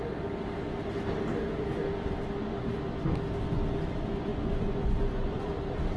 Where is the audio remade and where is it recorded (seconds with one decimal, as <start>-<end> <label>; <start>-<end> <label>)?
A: 0.0-4.3 recorded; 4.3-5.4 remade; 5.4-6.0 recorded